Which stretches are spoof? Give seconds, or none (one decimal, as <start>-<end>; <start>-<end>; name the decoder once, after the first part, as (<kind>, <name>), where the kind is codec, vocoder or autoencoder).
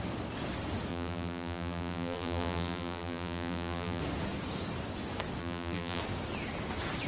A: 0.9-4.0 (vocoder, BigVGAN v2); 5.4-6.0